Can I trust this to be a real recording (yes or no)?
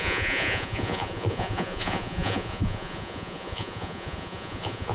no